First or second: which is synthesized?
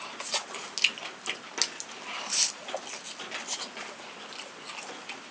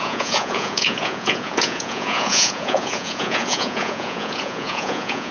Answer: second